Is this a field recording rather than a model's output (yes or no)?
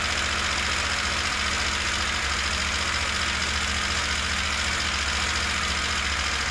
yes